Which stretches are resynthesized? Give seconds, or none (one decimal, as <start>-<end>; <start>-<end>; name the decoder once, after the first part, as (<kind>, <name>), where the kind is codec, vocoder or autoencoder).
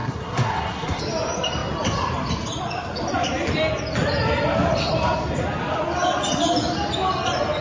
0.0-1.0 (codec, SNAC)